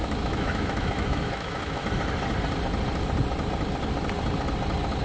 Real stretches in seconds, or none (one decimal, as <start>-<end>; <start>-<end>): 1.8-5.0